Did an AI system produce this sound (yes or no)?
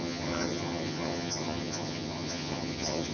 yes